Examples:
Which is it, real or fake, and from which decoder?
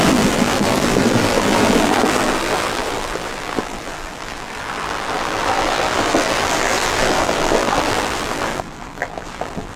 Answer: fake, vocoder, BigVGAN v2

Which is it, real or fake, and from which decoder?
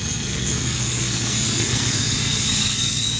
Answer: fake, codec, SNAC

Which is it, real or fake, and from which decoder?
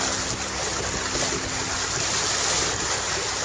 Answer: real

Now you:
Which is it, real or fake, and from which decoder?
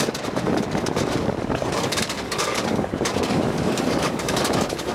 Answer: fake, codec, DAC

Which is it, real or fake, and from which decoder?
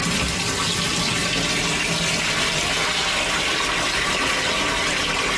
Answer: real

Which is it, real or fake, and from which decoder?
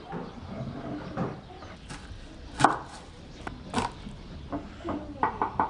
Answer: real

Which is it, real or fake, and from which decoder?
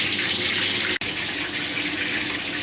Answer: real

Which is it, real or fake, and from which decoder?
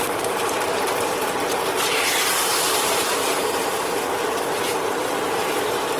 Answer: fake, vocoder, BigVGAN v2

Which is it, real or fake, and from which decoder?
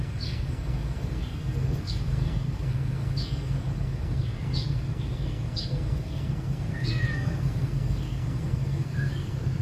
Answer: fake, codec, SNAC